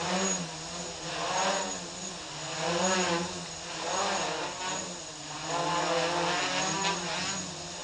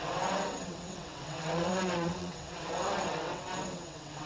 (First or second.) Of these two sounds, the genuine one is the first